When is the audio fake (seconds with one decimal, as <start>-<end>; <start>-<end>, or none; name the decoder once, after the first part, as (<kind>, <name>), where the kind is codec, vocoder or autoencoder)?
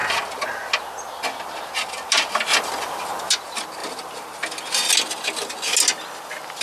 none